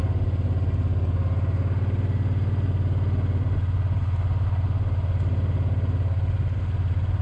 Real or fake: real